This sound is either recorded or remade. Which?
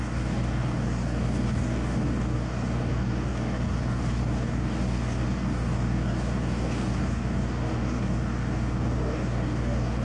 remade